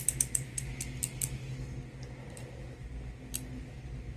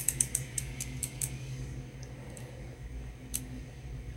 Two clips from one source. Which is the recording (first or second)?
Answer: first